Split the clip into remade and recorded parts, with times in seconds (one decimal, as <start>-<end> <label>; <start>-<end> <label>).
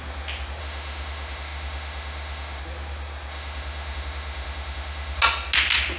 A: 0.0-0.6 recorded; 0.6-2.6 remade; 2.6-3.3 recorded; 3.3-5.2 remade; 5.2-6.0 recorded